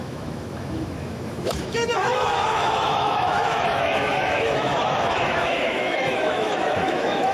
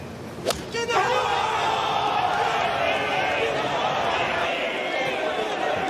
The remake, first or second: first